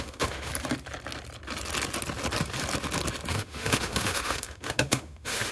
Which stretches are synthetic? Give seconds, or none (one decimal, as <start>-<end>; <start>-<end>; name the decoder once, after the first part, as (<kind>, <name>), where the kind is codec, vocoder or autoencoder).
0.0-0.5 (autoencoder, DAC-VAE); 3.3-5.5